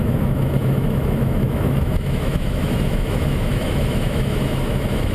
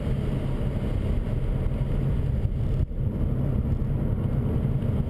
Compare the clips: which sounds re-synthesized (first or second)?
first